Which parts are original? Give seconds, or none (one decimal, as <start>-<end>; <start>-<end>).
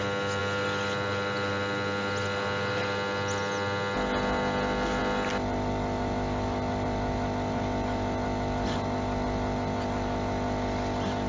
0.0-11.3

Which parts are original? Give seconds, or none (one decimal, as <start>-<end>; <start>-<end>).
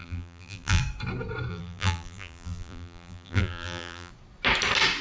0.8-1.5; 4.1-5.0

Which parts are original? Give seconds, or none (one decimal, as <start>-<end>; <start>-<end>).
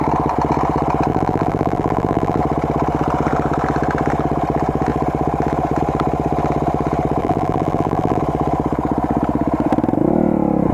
0.0-1.1; 2.4-7.2; 8.2-10.7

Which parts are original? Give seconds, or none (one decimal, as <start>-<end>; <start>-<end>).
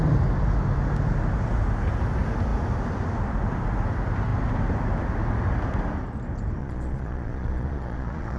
0.0-6.6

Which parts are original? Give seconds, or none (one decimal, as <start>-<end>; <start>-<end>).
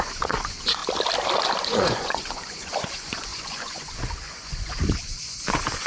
0.8-1.6